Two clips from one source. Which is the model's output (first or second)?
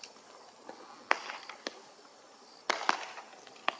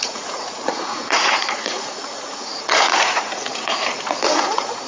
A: second